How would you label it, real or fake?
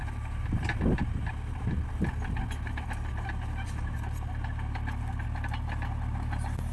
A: real